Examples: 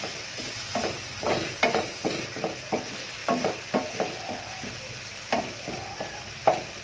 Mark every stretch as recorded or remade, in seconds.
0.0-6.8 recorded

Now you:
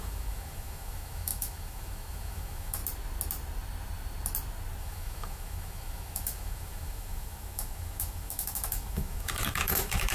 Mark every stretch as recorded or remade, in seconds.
0.0-2.8 remade; 2.8-4.8 recorded; 4.8-10.1 remade